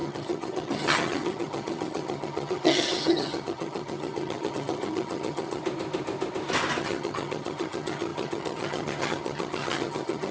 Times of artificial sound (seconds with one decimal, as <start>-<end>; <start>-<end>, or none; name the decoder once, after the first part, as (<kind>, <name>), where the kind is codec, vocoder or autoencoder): 0.0-5.6 (vocoder, HiFi-GAN); 6.8-10.3